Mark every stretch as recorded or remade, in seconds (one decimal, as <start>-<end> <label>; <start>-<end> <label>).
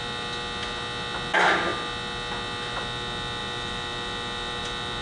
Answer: 0.0-3.4 recorded; 3.4-4.6 remade; 4.6-5.0 recorded